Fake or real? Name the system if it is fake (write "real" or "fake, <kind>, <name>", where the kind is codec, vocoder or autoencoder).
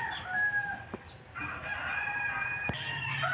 real